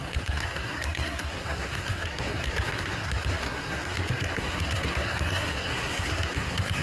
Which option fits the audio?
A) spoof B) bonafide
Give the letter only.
A